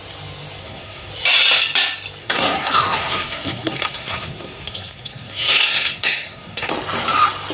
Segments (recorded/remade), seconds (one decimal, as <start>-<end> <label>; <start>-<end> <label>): 0.0-0.6 recorded; 0.6-1.1 remade; 1.1-2.2 recorded; 2.2-6.7 remade; 6.7-7.5 recorded